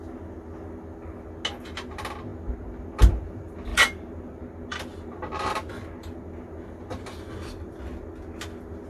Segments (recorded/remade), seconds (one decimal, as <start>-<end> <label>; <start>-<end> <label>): 0.0-3.7 recorded; 3.7-4.4 remade; 4.4-4.9 recorded; 4.9-5.7 remade; 5.7-8.9 recorded

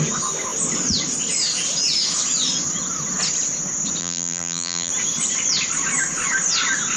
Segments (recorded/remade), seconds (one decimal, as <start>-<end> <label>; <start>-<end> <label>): 0.0-4.0 recorded; 4.0-4.9 remade; 4.9-7.0 recorded

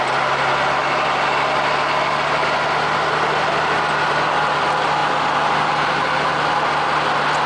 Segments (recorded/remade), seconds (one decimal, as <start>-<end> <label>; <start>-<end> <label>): 0.0-7.5 recorded

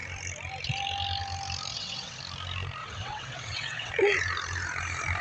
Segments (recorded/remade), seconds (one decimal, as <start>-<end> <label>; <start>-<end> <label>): 0.0-1.7 recorded; 1.7-2.2 remade; 2.2-2.8 recorded; 2.8-3.9 remade; 3.9-5.2 recorded

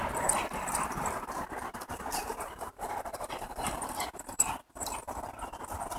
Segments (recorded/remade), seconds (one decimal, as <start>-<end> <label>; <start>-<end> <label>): 0.0-2.2 recorded; 2.2-4.5 remade; 4.5-6.0 recorded

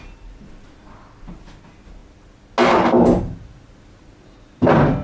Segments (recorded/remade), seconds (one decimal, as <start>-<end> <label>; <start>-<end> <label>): 0.0-5.0 recorded